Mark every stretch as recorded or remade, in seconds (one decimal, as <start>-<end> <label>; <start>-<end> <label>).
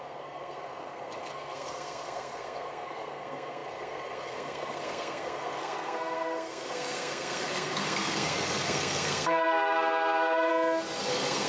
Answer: 0.0-10.5 remade; 10.5-11.1 recorded; 11.1-11.5 remade